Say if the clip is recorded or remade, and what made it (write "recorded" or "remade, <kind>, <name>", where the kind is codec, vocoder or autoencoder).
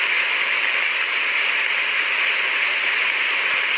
recorded